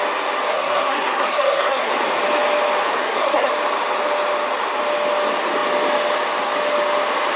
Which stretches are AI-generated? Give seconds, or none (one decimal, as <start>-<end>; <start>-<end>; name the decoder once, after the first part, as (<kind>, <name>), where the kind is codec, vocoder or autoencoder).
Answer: 0.5-1.9 (codec, SNAC); 3.0-3.5